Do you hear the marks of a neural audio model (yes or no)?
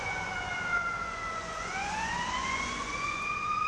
yes